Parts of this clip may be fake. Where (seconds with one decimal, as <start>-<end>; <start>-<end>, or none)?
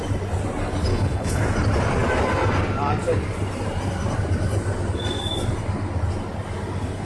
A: 0.9-1.4